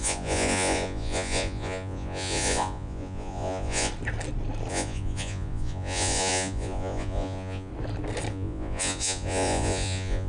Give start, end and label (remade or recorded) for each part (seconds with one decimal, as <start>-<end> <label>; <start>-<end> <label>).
0.0-3.9 remade; 3.9-4.7 recorded; 4.7-7.7 remade; 7.7-8.3 recorded; 8.3-10.3 remade

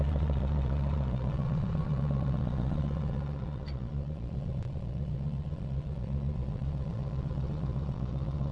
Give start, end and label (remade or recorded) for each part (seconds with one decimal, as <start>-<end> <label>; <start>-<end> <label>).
0.0-8.5 remade

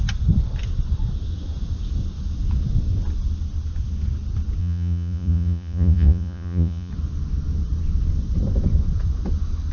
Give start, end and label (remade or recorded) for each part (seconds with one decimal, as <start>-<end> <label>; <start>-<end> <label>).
0.0-4.6 recorded; 4.6-6.9 remade; 6.9-9.7 recorded

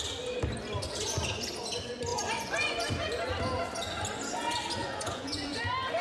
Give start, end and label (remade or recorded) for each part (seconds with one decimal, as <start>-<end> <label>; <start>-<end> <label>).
0.0-2.1 recorded; 2.1-2.9 remade; 2.9-4.8 recorded; 4.8-5.6 remade; 5.6-6.0 recorded

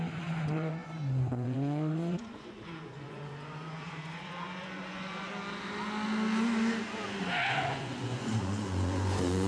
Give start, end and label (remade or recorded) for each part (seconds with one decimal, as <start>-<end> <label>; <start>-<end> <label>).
0.0-5.3 remade; 5.3-7.2 recorded; 7.2-9.5 remade

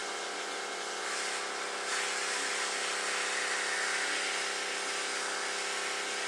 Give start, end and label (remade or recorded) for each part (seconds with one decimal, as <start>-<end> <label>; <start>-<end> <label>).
0.0-1.1 remade; 1.1-6.3 recorded

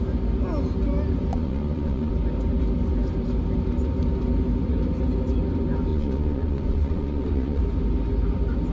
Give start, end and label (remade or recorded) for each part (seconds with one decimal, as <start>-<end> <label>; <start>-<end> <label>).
0.0-1.3 recorded; 1.3-2.1 remade; 2.1-5.9 recorded; 5.9-7.6 remade; 7.6-8.7 recorded

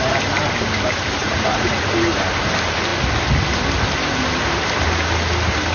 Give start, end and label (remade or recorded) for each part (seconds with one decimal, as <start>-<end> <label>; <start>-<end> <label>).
0.0-1.2 recorded; 1.2-1.9 remade; 1.9-5.7 recorded